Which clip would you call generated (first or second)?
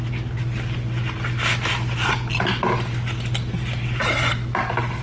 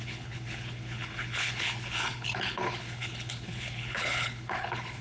second